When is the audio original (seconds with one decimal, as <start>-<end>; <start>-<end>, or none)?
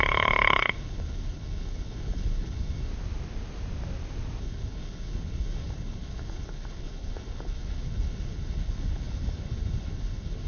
2.9-4.4